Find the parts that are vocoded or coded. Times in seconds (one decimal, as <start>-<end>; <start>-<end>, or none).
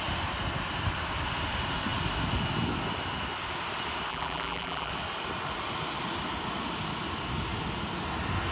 4.1-4.9